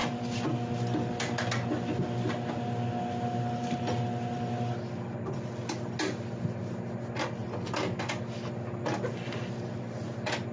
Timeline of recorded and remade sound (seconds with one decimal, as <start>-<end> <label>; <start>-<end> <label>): 0.0-10.5 recorded